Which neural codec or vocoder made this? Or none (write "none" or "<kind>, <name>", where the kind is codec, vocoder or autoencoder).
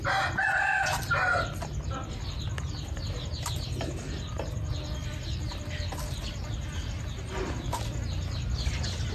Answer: none